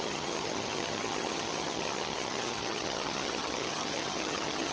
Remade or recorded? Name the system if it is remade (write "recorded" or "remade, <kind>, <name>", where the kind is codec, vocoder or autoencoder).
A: remade, vocoder, HiFi-GAN